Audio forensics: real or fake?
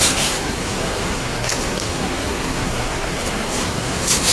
fake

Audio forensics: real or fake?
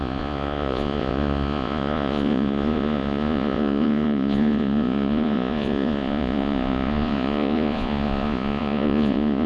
fake